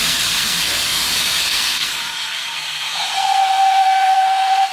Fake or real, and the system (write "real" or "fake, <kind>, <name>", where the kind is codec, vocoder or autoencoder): fake, codec, SNAC